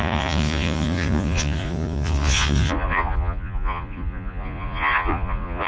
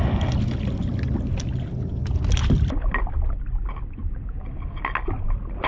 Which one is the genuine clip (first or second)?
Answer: second